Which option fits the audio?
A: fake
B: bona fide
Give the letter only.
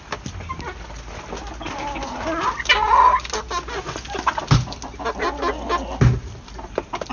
B